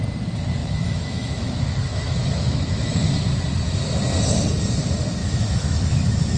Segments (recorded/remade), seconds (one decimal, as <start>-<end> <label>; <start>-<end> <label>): 0.0-0.6 recorded; 0.6-3.1 remade; 3.1-5.2 recorded; 5.2-6.4 remade